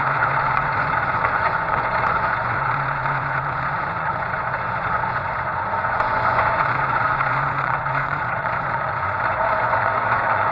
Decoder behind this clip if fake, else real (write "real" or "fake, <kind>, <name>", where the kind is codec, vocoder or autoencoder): fake, vocoder, Vocos